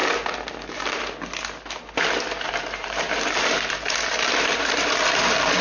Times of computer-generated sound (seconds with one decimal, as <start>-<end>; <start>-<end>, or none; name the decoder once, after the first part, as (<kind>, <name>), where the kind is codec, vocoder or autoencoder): 2.5-5.6 (vocoder, BigVGAN v2)